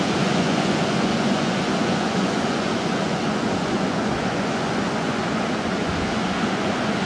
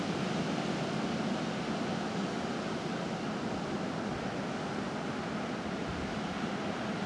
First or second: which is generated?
first